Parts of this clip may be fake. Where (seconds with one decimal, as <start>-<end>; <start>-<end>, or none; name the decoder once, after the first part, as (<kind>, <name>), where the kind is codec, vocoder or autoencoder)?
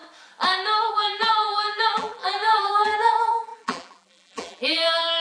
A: 0.9-5.2 (vocoder, BigVGAN v2)